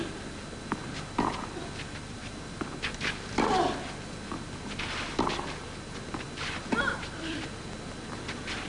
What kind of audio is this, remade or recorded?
recorded